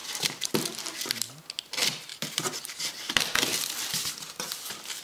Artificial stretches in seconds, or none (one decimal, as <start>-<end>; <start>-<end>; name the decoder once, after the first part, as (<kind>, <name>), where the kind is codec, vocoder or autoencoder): 0.0-0.8 (vocoder, BigVGAN v2); 2.1-3.4